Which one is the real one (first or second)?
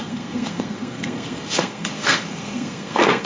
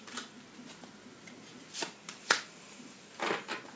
second